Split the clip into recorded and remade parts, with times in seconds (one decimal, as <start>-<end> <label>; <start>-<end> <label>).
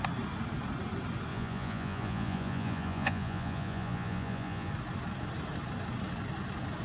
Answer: 0.0-1.3 recorded; 1.3-4.7 remade; 4.7-6.8 recorded